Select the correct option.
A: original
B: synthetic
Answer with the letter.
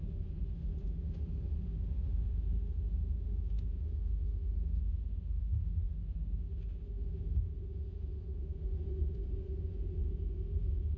B